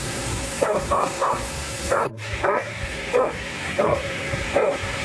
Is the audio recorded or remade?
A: remade